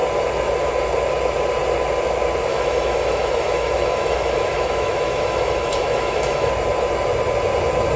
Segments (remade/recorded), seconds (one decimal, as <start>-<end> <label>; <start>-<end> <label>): 0.0-2.5 recorded; 2.5-6.5 remade; 6.5-8.0 recorded